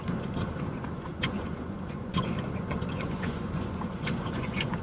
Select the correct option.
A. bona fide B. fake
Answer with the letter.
B